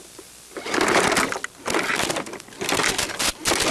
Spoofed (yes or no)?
no